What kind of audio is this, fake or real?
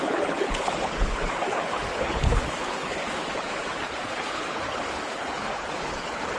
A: fake